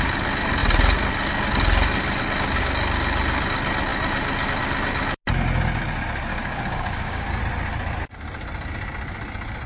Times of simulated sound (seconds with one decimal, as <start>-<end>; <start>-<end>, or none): 6.3-7.4